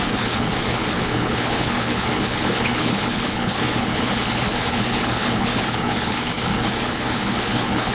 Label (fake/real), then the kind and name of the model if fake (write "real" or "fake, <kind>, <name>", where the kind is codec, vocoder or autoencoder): fake, codec, HILCodec